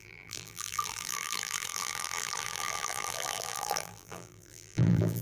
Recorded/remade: remade